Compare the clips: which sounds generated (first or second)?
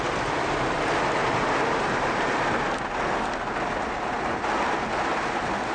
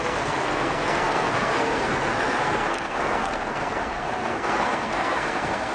second